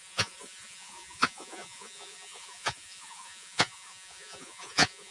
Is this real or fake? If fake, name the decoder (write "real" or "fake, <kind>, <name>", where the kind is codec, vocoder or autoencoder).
fake, vocoder, Vocos